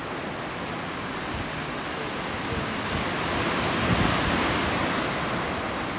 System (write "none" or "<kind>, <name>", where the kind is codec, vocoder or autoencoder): none